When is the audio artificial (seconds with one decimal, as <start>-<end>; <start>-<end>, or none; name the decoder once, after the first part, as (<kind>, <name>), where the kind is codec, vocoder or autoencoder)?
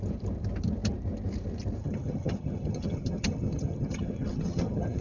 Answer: 1.8-5.0 (vocoder, HiFi-GAN)